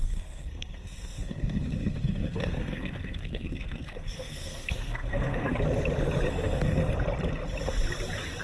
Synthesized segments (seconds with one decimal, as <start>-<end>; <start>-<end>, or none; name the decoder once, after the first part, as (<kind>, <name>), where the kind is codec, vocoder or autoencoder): 0.0-5.5 (codec, SNAC); 6.3-6.8